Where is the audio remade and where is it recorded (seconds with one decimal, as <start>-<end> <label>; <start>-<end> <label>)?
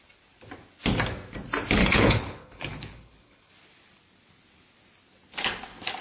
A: 0.0-1.8 recorded; 1.8-3.5 remade; 3.5-6.0 recorded